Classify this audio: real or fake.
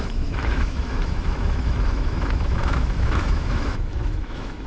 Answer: fake